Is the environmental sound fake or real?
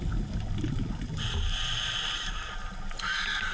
real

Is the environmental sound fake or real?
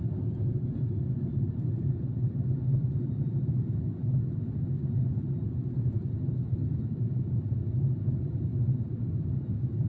real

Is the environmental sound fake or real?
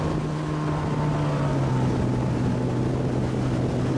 real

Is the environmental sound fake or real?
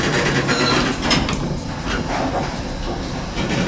real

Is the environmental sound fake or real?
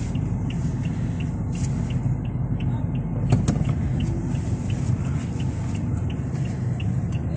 real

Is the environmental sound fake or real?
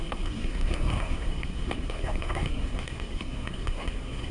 fake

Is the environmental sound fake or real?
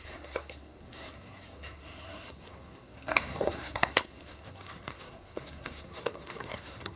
fake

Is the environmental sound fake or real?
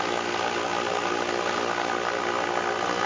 real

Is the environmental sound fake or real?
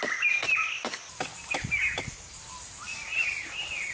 real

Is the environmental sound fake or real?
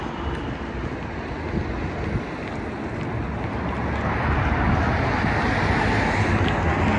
real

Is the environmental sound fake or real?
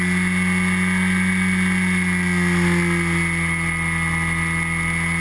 real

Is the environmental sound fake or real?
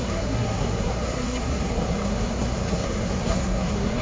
fake